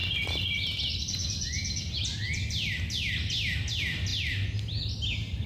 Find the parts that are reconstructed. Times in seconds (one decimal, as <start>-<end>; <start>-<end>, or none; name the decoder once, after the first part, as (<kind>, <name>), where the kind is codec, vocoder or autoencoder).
none